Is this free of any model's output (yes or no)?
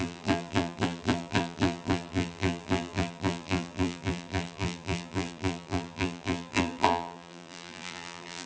no